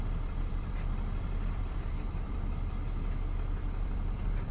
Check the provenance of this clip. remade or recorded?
remade